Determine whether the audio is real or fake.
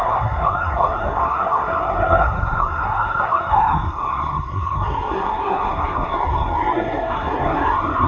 fake